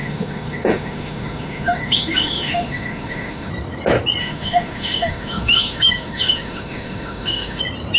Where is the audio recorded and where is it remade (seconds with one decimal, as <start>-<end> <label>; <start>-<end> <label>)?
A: 0.0-3.5 remade; 3.5-4.2 recorded; 4.2-7.6 remade; 7.6-8.0 recorded